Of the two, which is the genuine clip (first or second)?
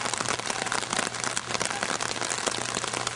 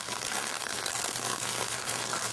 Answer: first